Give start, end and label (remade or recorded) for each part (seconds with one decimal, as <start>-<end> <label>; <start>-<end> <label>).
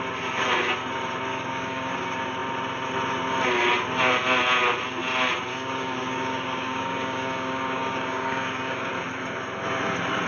0.0-1.3 recorded; 1.3-2.0 remade; 2.0-5.5 recorded; 5.5-8.9 remade; 8.9-10.3 recorded